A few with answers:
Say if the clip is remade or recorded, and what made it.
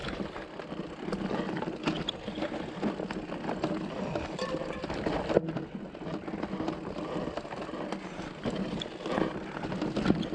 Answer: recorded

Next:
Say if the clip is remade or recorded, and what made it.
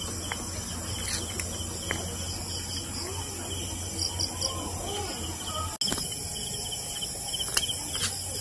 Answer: recorded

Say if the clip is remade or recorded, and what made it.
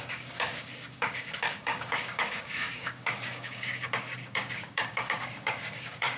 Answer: remade, codec, DAC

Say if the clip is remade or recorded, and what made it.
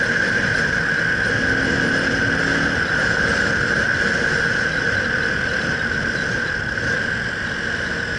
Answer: recorded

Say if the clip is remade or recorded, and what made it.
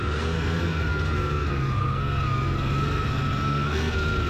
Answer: remade, codec, SNAC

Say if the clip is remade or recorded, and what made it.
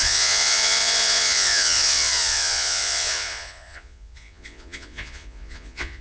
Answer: remade, vocoder, Vocos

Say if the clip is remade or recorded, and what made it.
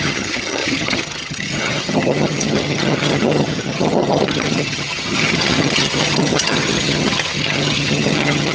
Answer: remade, vocoder, HiFi-GAN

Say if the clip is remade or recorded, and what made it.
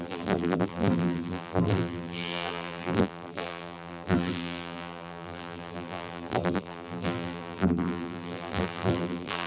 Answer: remade, vocoder, BigVGAN v2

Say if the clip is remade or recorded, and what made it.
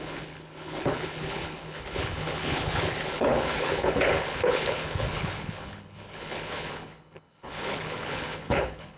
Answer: remade, codec, HILCodec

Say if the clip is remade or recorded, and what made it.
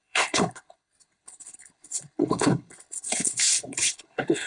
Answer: remade, codec, HILCodec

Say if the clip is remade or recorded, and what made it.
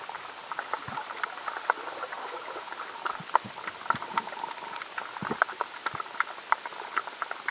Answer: recorded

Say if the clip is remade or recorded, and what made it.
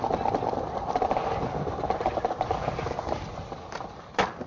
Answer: recorded